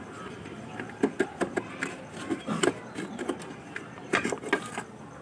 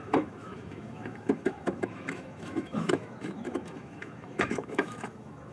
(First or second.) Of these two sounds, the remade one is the second